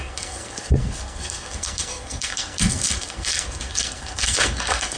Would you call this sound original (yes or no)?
no